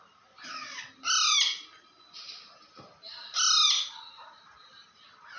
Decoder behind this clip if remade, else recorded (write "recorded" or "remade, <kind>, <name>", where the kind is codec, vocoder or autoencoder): recorded